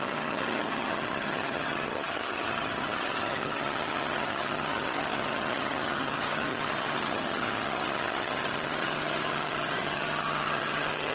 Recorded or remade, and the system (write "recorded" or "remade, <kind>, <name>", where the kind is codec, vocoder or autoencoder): remade, vocoder, HiFi-GAN